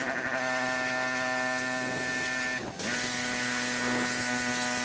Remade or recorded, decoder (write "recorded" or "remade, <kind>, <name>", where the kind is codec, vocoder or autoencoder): recorded